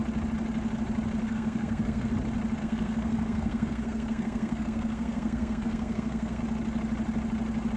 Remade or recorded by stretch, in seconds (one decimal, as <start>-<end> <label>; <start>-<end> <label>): 0.0-1.2 recorded; 1.2-2.1 remade; 2.1-2.6 recorded; 2.6-6.4 remade; 6.4-7.8 recorded